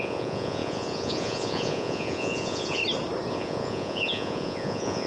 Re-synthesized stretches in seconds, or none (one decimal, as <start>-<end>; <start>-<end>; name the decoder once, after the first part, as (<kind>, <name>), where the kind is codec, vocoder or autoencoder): 0.0-2.8 (vocoder, Vocos); 3.3-5.1